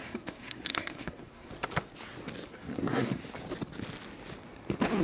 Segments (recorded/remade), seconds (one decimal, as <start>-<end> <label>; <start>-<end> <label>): 0.0-1.5 remade; 1.5-2.5 recorded; 2.5-3.2 remade; 3.2-5.0 recorded